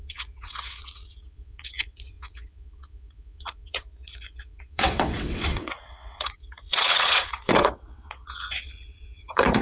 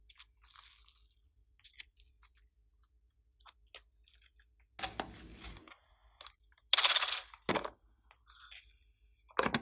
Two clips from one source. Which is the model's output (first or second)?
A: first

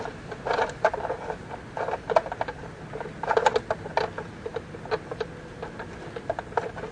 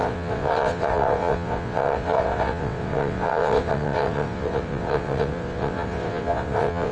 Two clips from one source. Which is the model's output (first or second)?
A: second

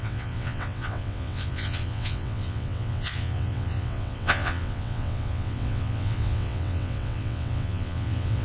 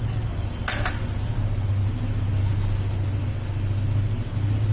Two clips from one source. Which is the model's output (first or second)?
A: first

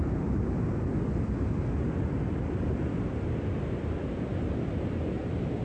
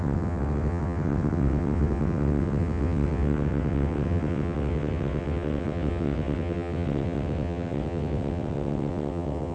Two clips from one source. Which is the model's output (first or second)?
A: second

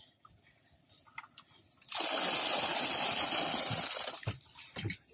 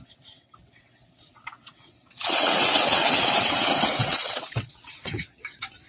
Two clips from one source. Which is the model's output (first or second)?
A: second